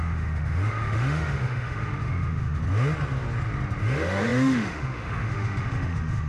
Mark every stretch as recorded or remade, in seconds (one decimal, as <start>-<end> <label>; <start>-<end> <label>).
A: 0.0-2.6 remade; 2.6-3.8 recorded; 3.8-6.3 remade